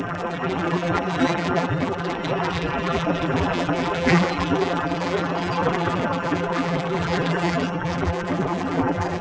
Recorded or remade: remade